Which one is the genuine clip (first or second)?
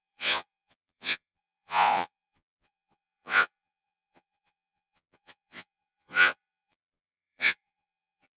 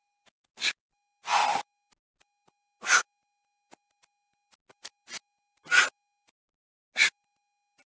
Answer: second